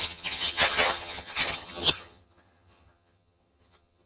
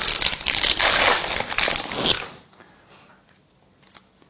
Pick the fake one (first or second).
first